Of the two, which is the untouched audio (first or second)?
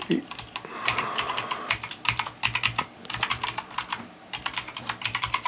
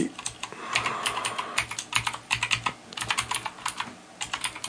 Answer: second